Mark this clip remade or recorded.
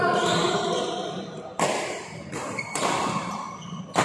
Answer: remade